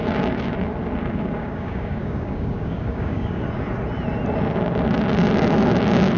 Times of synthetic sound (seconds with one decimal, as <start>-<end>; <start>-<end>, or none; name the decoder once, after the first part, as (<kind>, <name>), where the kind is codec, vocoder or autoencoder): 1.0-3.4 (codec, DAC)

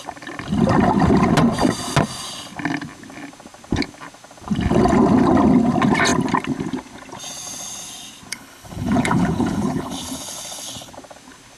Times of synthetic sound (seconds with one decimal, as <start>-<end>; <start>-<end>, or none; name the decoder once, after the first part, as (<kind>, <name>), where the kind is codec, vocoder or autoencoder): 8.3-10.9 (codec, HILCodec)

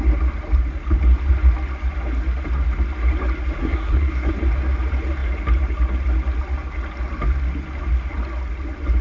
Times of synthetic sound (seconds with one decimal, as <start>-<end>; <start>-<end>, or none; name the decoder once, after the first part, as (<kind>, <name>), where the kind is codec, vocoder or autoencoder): 3.6-4.3 (codec, SNAC)